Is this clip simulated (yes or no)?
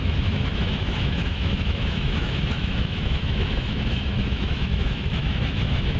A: yes